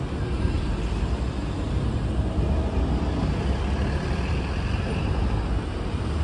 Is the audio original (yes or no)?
yes